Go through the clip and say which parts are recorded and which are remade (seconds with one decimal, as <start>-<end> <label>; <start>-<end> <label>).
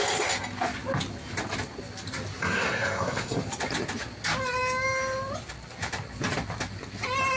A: 0.0-2.4 recorded; 2.4-3.4 remade; 3.4-7.4 recorded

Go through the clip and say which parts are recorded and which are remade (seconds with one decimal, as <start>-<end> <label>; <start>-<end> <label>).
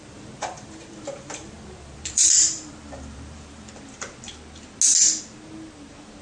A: 0.0-3.7 remade; 3.7-6.2 recorded